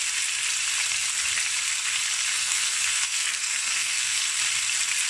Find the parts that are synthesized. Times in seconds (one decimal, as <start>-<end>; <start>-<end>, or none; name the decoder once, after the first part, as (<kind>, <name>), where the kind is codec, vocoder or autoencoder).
2.4-4.2 (codec, SNAC)

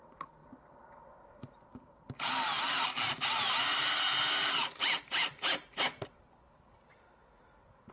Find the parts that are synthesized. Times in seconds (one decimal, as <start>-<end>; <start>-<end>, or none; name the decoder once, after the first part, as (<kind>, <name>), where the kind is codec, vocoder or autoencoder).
none

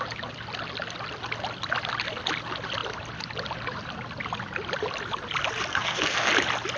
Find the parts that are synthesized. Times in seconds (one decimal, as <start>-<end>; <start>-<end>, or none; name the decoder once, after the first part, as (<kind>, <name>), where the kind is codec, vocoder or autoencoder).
5.7-6.3 (codec, SNAC)

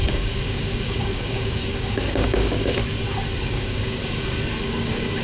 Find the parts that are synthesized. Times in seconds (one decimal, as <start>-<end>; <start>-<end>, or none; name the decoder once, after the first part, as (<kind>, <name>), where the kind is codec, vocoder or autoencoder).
0.0-2.8 (codec, DAC); 3.4-4.0; 4.6-5.2

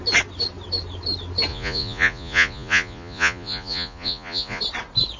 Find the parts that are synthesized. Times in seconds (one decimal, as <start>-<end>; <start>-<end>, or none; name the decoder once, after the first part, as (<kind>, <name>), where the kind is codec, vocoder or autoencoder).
1.5-4.6 (vocoder, Vocos)

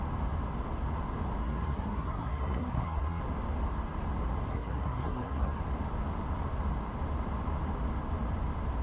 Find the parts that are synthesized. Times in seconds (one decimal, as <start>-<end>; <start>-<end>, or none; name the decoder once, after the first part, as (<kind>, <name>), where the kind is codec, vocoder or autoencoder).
1.4-3.2 (codec, SNAC); 4.5-5.6